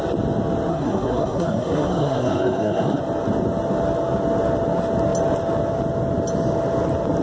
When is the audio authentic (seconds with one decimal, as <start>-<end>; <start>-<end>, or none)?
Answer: 0.0-0.7; 3.0-7.2